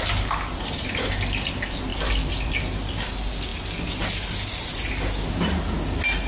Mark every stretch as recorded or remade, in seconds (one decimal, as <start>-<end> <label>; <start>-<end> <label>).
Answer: 0.0-1.9 recorded; 1.9-2.5 remade; 2.5-6.3 recorded